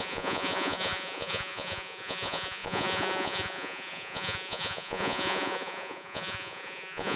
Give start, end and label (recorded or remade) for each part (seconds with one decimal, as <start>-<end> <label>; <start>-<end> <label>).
0.0-7.2 remade